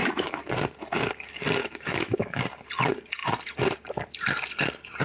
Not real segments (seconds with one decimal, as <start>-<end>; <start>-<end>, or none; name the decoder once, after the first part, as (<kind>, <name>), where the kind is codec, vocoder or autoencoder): 0.0-0.5 (autoencoder, DAC-VAE); 1.6-2.4